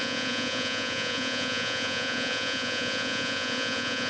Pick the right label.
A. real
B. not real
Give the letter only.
B